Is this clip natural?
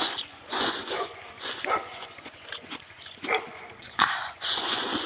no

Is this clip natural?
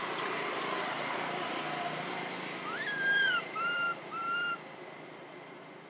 yes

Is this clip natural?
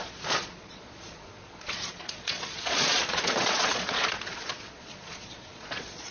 no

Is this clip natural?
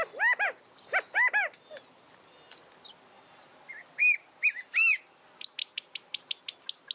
yes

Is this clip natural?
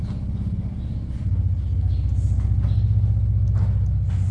yes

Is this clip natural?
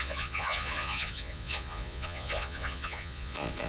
no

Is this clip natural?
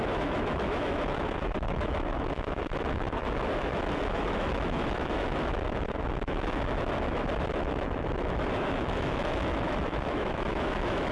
no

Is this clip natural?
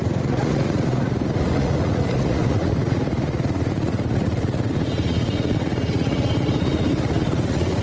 no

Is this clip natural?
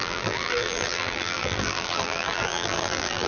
no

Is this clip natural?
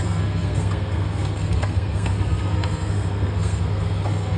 no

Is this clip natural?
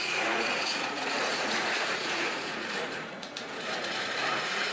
no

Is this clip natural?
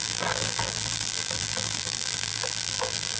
no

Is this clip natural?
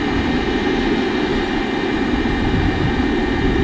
yes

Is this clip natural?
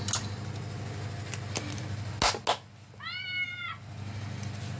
yes